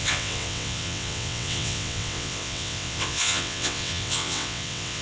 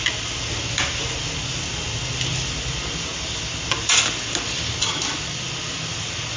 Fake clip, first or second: first